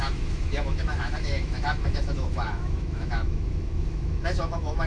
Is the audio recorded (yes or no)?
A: no